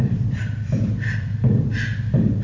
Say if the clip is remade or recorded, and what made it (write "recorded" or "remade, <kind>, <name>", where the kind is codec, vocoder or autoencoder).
remade, vocoder, BigVGAN v2